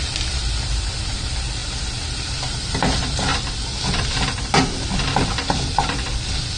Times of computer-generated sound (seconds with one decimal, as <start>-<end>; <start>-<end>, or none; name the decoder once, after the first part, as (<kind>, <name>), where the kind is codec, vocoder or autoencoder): 0.0-0.4 (vocoder, BigVGAN v2); 1.0-1.6; 2.4-3.3; 5.1-6.6